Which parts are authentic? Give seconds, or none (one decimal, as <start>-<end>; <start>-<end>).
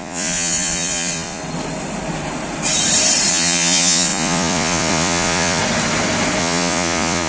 1.4-3.3; 5.6-6.4